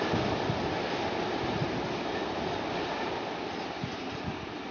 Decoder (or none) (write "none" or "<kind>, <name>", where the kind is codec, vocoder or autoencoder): none